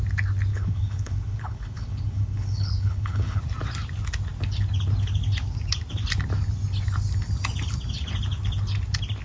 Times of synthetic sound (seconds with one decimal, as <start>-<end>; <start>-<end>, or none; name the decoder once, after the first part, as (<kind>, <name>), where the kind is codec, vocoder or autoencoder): 0.5-3.4 (codec, HILCodec)